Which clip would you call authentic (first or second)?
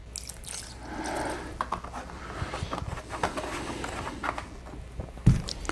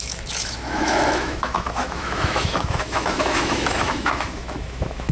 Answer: first